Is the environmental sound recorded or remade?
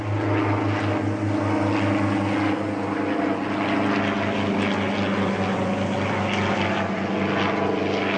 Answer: recorded